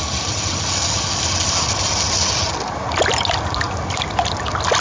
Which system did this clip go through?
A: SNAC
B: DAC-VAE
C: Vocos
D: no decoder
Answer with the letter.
D